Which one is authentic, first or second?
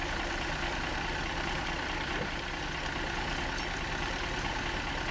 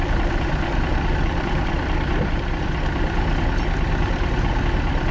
first